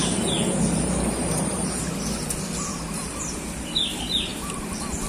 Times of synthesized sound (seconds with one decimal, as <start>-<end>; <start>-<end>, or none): 0.0-1.9; 2.7-3.2